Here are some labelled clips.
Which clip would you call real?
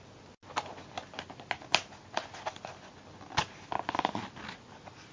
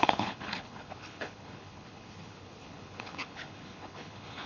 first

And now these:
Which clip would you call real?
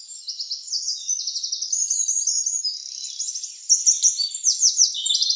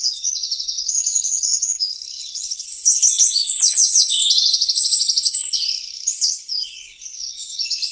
first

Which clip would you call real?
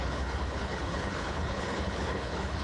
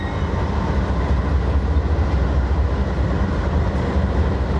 second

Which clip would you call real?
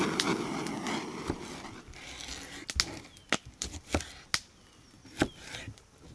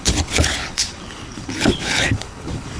first